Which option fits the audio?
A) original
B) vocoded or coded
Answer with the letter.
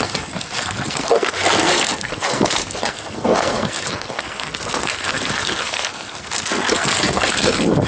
B